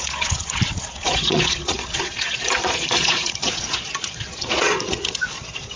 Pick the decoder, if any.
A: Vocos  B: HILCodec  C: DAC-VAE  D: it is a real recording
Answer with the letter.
A